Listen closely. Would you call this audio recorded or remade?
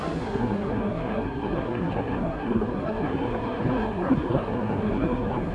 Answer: remade